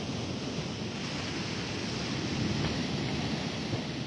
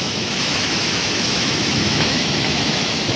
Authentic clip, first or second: first